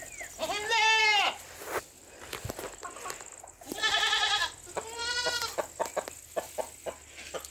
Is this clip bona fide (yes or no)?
yes